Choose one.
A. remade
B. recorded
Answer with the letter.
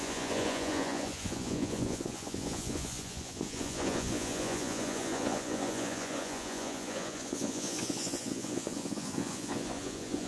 A